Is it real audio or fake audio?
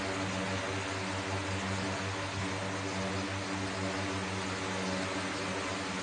real